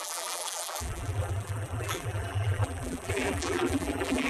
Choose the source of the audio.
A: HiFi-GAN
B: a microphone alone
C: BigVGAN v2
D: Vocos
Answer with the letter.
C